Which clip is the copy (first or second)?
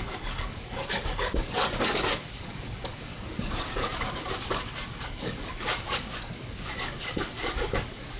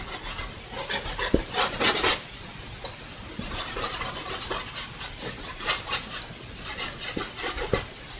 first